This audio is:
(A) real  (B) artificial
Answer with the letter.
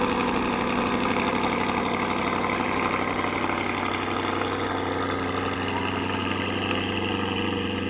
A